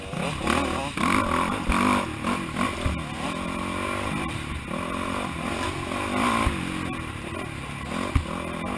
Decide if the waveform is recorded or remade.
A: recorded